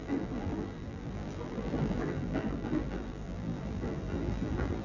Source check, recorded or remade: remade